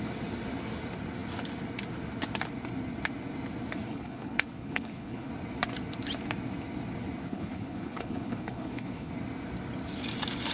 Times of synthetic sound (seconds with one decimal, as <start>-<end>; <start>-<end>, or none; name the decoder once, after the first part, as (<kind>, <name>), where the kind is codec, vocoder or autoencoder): 3.9-5.3 (codec, HILCodec); 7.3-9.1